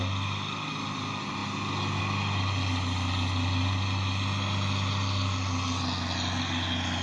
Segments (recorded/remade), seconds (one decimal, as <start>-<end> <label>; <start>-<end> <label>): 0.0-7.0 recorded